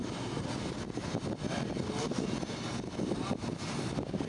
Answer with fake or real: real